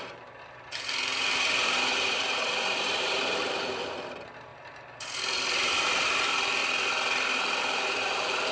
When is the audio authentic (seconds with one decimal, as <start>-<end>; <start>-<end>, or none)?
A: 6.6-7.6